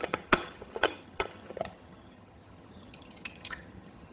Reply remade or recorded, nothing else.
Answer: remade